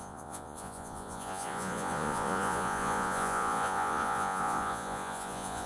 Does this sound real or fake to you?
fake